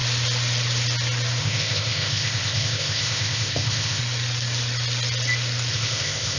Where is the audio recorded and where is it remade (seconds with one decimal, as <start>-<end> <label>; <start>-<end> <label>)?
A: 0.0-1.4 recorded; 1.4-4.0 remade; 4.0-5.7 recorded; 5.7-6.4 remade